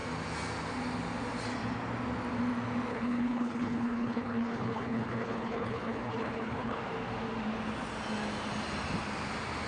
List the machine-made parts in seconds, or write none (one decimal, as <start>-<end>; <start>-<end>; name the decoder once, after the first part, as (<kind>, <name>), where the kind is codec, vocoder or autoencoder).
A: 2.9-6.8 (codec, HILCodec)